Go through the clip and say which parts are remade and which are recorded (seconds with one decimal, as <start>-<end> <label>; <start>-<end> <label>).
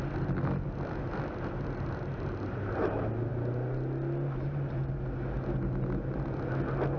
0.0-7.0 recorded